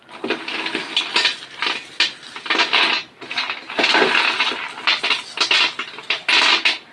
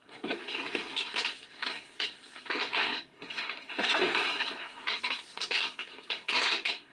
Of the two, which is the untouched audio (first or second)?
first